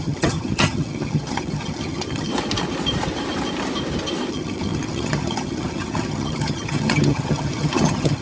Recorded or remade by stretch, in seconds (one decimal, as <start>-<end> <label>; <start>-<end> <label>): 0.0-2.3 remade; 2.3-4.3 recorded; 4.3-8.2 remade